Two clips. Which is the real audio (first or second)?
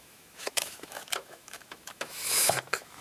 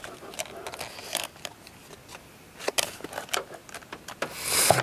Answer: second